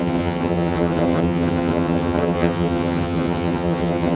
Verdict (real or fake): fake